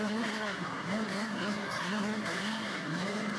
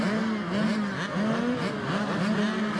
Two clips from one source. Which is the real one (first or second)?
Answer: second